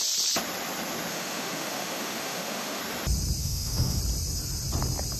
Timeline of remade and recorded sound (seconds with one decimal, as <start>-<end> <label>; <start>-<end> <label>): 0.0-1.1 recorded; 1.1-2.8 remade; 2.8-3.4 recorded; 3.4-4.0 remade; 4.0-5.2 recorded